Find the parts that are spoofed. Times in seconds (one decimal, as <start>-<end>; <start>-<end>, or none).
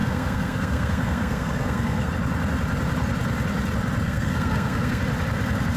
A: 0.0-2.1; 4.0-5.0